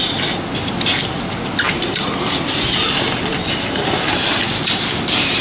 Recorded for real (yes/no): yes